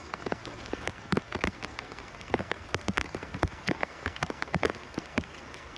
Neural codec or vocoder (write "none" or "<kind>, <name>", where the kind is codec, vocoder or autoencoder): codec, SNAC